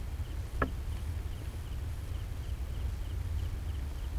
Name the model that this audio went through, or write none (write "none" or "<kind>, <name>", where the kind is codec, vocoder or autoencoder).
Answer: none